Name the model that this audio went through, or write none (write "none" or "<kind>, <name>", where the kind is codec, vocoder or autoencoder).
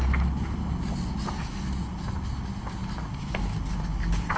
none